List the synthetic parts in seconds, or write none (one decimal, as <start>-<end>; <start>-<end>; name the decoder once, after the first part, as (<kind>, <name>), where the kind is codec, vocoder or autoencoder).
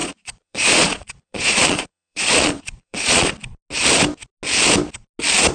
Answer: 0.0-3.3 (vocoder, Vocos)